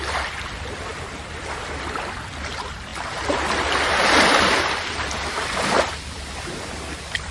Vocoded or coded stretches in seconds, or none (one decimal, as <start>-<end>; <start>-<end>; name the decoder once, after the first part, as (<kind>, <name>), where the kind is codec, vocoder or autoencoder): none